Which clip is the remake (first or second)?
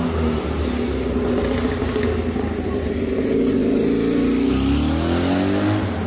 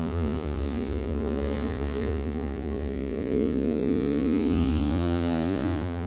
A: second